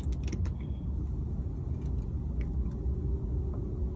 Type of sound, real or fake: real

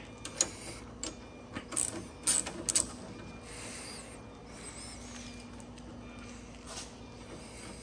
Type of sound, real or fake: real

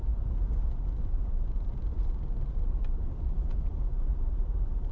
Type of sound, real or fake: fake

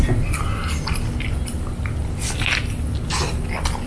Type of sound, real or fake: real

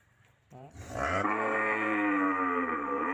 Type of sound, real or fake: fake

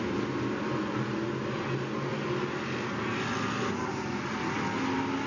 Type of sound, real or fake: real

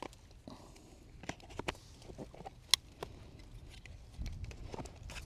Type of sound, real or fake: real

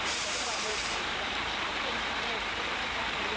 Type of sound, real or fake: fake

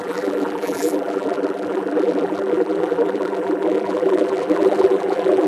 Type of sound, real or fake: fake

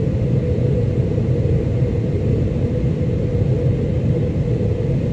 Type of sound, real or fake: real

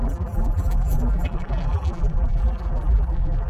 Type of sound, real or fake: fake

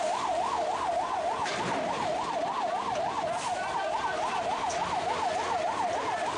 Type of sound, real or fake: fake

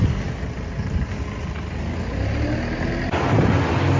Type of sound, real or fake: real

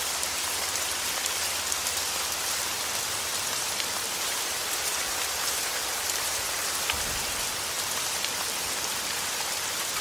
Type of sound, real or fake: fake